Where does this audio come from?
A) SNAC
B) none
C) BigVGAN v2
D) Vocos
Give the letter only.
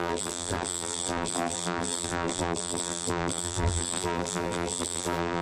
C